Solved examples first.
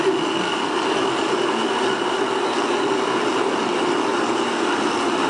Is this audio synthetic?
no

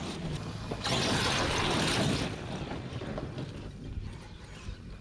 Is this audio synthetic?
no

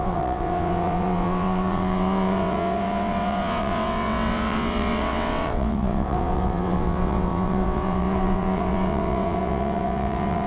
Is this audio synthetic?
yes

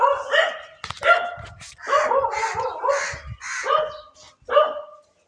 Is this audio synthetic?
no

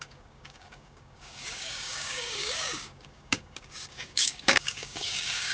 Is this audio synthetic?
yes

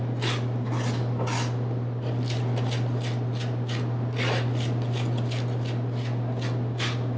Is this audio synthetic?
no